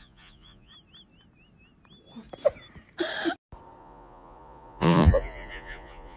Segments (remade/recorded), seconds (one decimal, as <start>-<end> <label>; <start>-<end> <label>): 0.0-0.7 remade; 0.7-3.8 recorded; 3.8-6.2 remade